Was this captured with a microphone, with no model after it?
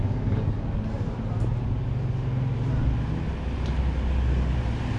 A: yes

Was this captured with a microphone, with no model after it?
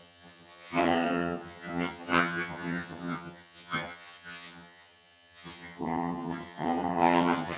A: no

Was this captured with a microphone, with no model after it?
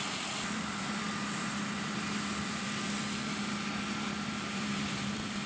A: no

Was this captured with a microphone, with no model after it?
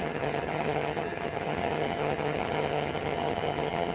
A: no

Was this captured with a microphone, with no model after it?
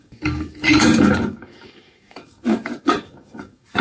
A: no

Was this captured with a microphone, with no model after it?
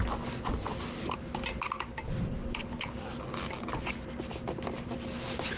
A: yes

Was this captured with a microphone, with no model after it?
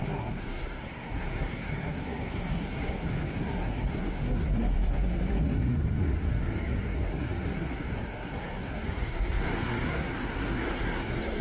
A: no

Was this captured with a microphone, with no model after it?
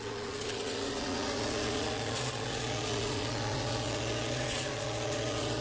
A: no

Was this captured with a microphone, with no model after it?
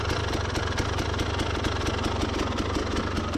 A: yes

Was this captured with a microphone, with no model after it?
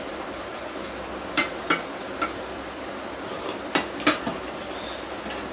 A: yes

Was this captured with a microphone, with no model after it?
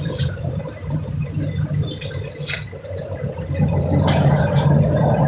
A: yes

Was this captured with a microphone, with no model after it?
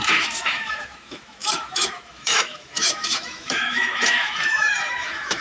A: no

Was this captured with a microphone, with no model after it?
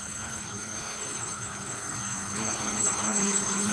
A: no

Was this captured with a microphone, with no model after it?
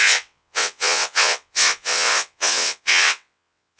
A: no